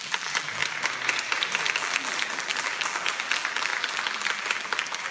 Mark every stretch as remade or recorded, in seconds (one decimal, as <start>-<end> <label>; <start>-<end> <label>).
0.0-0.6 remade; 0.6-1.6 recorded; 1.6-5.1 remade